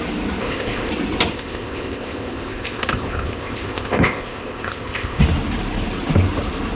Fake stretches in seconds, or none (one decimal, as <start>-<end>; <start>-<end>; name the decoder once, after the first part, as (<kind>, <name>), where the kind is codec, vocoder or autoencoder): 0.4-0.9 (codec, ZipCodec); 1.3-5.2